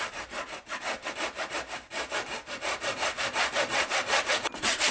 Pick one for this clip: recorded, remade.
remade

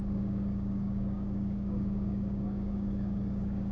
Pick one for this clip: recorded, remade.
remade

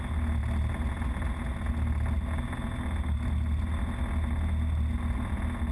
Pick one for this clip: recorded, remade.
recorded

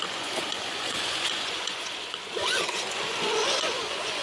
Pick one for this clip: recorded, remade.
remade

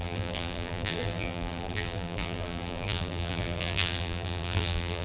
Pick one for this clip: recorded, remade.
remade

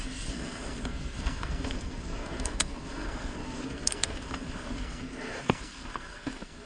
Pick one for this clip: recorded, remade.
remade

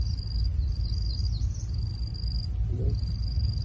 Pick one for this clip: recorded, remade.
recorded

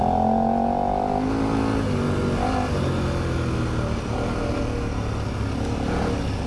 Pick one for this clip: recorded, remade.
recorded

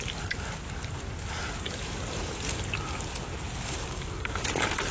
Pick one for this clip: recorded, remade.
recorded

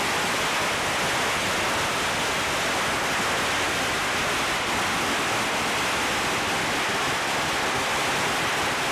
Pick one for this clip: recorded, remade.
recorded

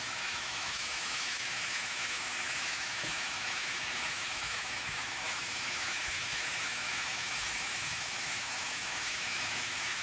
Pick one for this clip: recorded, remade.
remade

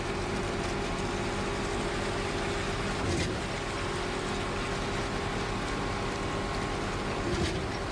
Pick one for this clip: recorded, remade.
recorded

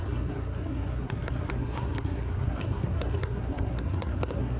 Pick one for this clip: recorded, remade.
remade